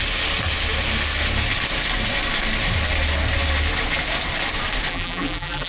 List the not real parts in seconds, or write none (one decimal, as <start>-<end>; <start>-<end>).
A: 4.9-5.7